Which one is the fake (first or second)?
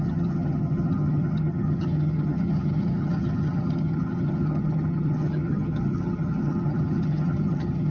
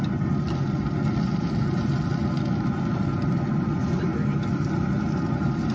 first